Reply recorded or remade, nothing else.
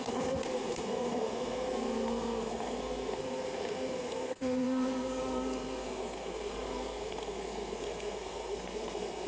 remade